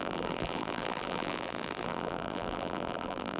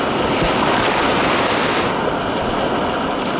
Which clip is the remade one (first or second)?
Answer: first